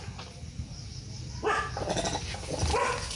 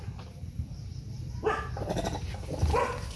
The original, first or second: first